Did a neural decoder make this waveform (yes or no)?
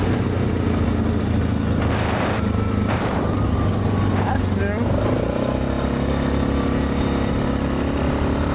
no